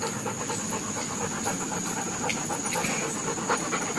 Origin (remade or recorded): recorded